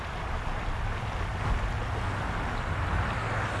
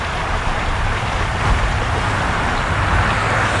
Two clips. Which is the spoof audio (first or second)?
second